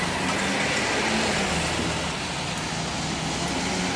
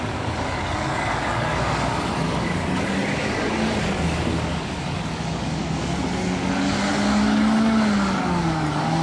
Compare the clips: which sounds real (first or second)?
first